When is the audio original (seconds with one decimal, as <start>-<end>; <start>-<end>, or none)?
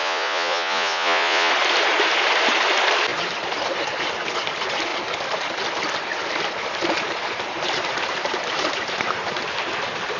1.5-10.2